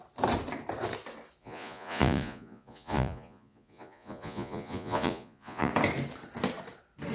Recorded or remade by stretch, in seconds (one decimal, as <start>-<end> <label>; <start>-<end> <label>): 0.0-1.4 recorded; 1.4-5.7 remade; 5.7-7.1 recorded